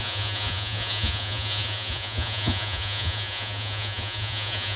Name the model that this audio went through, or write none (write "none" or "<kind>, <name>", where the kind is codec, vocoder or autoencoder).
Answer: vocoder, Vocos